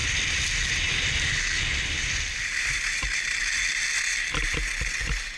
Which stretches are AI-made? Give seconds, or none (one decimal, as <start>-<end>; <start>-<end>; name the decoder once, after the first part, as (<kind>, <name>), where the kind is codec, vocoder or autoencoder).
0.0-3.2 (vocoder, BigVGAN v2)